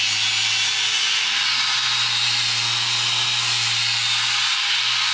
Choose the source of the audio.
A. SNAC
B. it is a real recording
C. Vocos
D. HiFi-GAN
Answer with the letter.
B